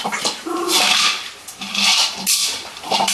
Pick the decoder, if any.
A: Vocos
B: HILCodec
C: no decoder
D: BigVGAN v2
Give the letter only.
D